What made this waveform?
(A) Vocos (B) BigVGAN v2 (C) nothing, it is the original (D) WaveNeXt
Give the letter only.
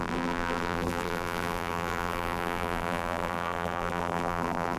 B